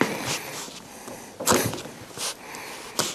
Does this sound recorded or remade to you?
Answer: recorded